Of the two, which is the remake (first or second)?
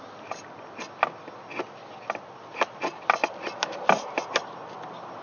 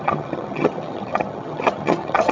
second